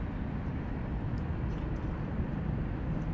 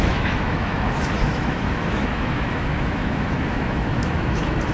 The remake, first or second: second